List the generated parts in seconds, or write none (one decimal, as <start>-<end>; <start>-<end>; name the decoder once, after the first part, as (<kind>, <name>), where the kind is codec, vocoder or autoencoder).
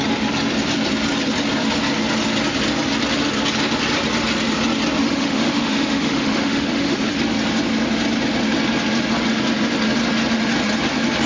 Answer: 5.0-7.1 (autoencoder, DAC-VAE)